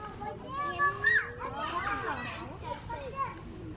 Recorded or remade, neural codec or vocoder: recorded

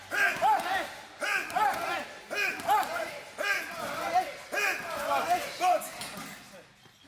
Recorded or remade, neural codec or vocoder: recorded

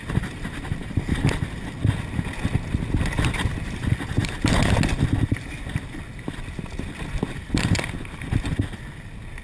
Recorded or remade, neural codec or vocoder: recorded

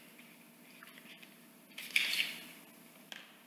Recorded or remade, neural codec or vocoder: recorded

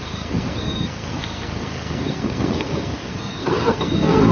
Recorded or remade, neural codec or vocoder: remade, codec, SNAC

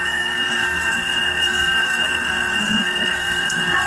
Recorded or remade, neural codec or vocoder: remade, codec, SNAC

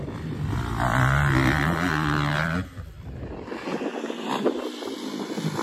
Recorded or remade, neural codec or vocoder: recorded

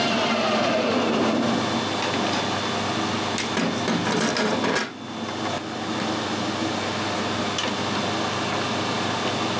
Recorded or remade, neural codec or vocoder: recorded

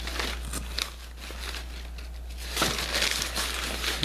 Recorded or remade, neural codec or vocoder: recorded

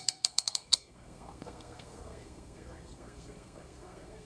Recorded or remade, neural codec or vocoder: remade, codec, SNAC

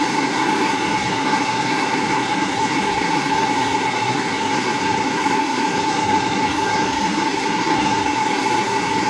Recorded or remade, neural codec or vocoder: remade, codec, SNAC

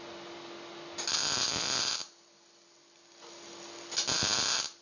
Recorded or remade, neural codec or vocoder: recorded